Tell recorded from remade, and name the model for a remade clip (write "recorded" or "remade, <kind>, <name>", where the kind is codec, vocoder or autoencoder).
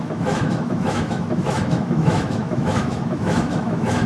remade, autoencoder, DAC-VAE